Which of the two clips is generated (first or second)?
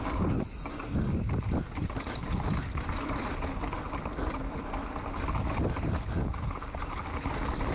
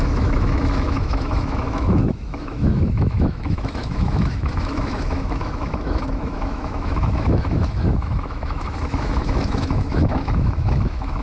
second